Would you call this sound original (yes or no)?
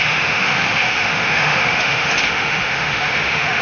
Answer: no